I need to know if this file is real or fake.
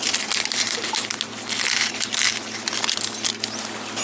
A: real